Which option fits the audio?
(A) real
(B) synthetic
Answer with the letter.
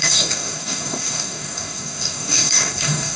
B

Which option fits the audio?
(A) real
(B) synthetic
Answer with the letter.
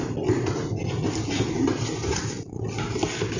A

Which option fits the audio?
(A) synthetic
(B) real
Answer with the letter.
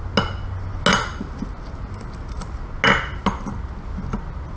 B